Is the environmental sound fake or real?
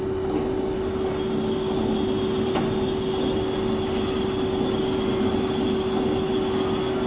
real